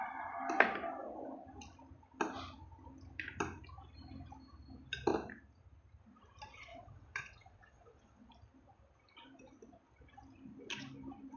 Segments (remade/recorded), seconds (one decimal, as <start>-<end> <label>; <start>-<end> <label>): 0.0-6.7 recorded; 6.7-8.3 remade; 8.3-11.4 recorded